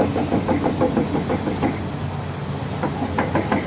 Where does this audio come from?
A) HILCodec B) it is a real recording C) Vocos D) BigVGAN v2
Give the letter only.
B